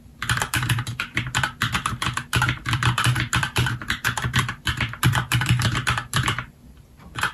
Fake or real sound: fake